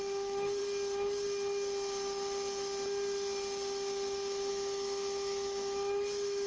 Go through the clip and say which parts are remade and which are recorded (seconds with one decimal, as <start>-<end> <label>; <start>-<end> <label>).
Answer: 0.0-0.6 remade; 0.6-4.5 recorded; 4.5-6.5 remade